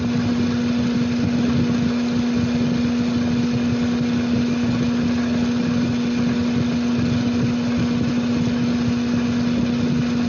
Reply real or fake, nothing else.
real